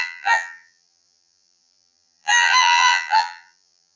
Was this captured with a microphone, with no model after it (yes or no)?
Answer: no